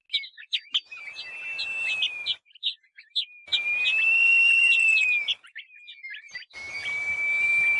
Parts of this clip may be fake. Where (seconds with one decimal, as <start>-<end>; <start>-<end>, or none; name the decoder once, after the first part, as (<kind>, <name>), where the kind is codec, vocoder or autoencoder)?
none